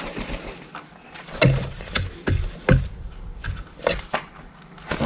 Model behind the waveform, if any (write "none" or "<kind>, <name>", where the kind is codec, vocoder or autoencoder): none